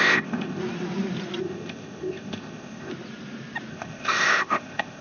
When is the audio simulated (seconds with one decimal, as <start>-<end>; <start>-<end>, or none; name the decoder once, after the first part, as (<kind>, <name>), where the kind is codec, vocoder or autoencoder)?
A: 0.0-0.6 (codec, ZipCodec); 1.4-2.9; 3.7-5.0